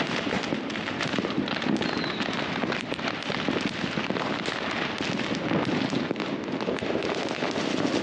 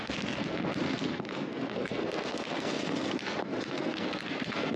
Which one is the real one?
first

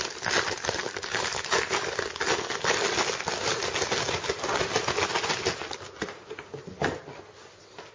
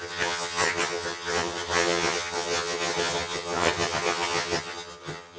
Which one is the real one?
first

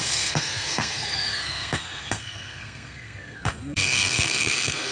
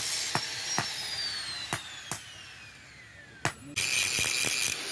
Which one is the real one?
second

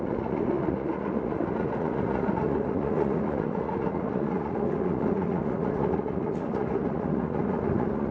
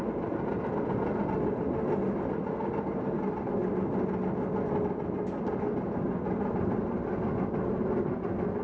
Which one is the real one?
second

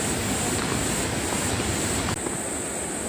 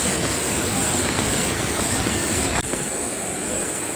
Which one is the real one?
first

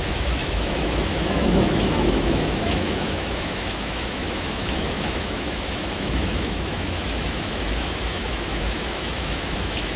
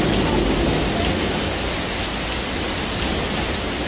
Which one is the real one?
second